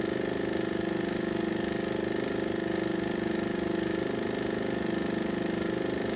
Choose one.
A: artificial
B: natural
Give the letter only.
B